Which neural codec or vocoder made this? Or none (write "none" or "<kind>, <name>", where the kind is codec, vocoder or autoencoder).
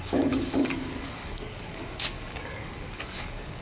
codec, DAC